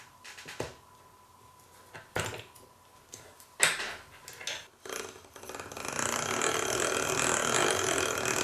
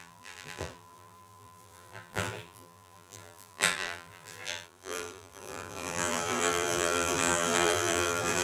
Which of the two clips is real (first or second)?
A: first